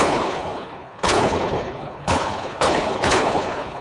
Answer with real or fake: fake